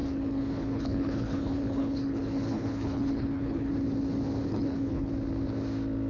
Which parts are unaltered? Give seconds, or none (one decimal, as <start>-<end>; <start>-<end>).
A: 3.7-4.5; 5.1-6.1